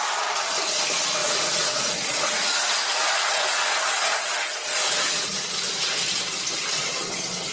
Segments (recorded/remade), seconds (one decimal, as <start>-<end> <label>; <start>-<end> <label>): 0.0-1.2 recorded; 1.2-3.8 remade; 3.8-4.4 recorded; 4.4-5.6 remade; 5.6-7.5 recorded